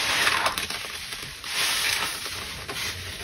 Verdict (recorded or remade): remade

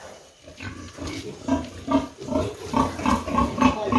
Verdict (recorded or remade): recorded